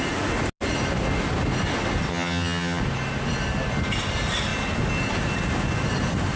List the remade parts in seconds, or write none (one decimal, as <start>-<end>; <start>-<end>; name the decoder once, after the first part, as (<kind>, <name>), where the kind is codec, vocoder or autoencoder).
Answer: 2.1-2.8 (vocoder, HiFi-GAN)